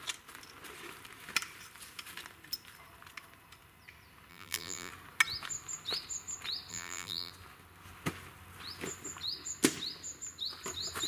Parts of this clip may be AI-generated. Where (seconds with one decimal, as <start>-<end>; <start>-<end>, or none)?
4.3-4.9; 6.7-7.3